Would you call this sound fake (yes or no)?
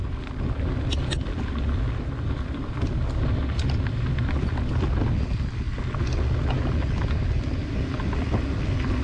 no